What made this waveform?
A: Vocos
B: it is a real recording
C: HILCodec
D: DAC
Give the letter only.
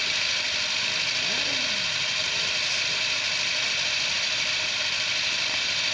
B